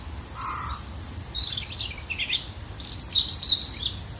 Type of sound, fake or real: fake